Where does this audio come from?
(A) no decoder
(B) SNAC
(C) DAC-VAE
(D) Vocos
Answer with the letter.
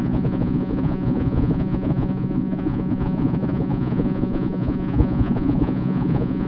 D